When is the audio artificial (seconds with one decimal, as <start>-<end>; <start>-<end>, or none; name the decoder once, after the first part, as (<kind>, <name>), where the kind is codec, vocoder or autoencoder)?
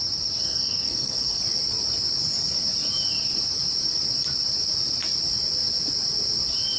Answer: 0.4-1.4 (codec, SNAC)